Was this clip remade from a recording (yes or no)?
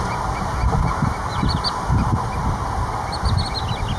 no